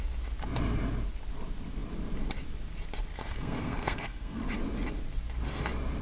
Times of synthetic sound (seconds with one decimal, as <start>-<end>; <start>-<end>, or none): 3.2-4.4